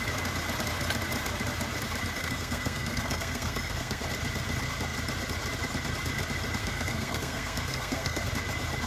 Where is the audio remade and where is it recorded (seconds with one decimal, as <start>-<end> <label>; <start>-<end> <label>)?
0.0-2.2 recorded; 2.2-4.0 remade; 4.0-6.6 recorded; 6.6-8.3 remade; 8.3-8.9 recorded